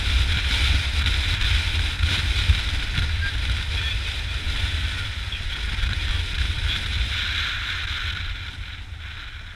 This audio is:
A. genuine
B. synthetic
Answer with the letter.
A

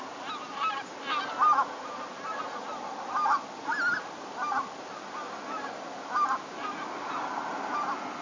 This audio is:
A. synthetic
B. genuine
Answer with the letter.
B